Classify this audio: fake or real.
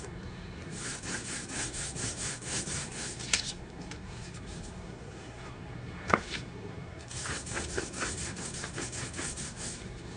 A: fake